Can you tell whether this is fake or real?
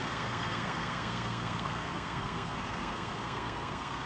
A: fake